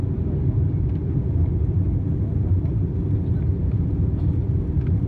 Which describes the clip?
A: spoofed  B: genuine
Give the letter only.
B